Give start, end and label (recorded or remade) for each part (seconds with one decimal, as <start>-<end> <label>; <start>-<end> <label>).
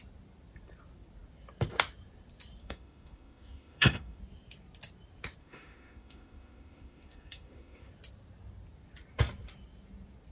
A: 0.0-2.6 recorded; 2.6-4.2 remade; 4.2-5.4 recorded; 5.4-7.9 remade; 7.9-10.3 recorded